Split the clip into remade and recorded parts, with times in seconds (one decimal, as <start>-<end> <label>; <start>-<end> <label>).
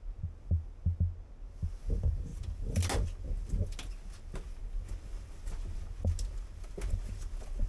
0.0-7.7 recorded